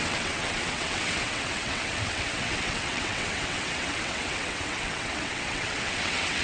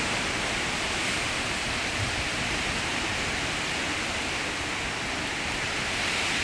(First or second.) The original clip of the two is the second